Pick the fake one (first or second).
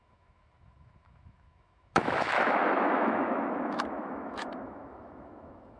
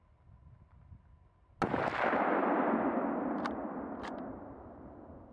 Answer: first